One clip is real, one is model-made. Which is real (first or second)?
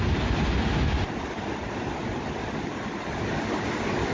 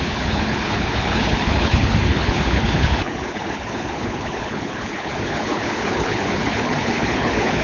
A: first